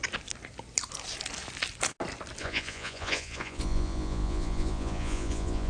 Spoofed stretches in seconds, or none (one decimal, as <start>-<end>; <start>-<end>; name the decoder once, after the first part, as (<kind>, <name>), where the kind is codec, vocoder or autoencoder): 2.4-5.7 (vocoder, Vocos)